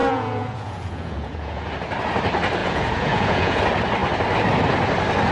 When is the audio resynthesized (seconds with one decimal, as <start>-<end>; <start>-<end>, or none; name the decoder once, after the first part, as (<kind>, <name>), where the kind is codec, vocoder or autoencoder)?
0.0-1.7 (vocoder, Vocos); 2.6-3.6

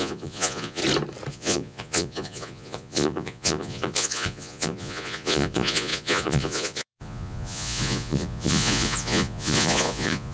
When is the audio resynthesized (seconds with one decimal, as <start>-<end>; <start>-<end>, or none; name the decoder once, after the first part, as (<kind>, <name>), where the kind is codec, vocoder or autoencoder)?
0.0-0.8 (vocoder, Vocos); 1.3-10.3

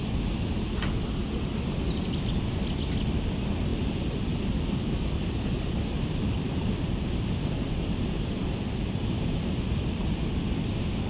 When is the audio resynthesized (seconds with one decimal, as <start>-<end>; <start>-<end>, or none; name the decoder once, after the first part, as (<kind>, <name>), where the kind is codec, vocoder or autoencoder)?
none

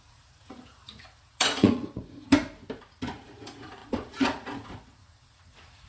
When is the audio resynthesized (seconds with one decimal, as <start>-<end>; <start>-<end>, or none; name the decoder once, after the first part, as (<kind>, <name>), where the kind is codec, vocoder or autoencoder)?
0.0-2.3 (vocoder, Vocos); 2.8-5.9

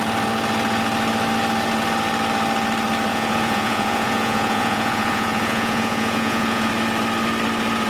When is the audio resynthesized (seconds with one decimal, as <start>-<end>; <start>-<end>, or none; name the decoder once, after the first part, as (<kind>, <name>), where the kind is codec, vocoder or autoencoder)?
3.1-6.7 (vocoder, Vocos)

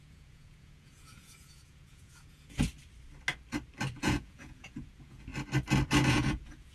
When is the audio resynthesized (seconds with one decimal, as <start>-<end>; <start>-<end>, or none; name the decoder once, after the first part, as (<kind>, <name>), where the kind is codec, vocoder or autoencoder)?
0.0-2.7 (vocoder, Vocos); 4.0-5.3; 6.1-6.7

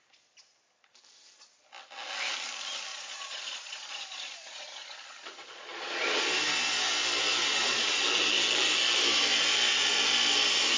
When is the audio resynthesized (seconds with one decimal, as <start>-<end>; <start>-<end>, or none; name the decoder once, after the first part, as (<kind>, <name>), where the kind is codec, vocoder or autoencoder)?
2.9-6.2 (vocoder, Vocos); 7.4-7.9